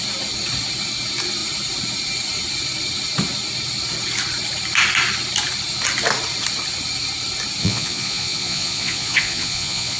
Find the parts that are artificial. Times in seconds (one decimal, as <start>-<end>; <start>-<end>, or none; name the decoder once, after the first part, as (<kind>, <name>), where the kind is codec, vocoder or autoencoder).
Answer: 7.6-10.0 (vocoder, Vocos)